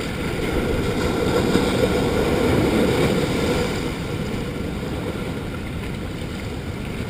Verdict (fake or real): fake